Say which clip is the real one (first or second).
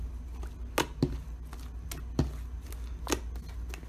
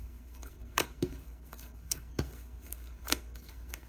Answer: first